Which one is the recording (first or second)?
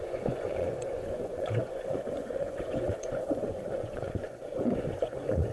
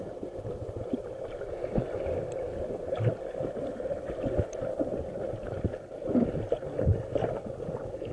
second